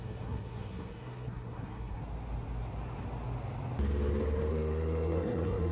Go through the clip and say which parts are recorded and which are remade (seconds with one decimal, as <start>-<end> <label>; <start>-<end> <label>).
0.0-2.0 remade; 2.0-4.5 recorded; 4.5-5.7 remade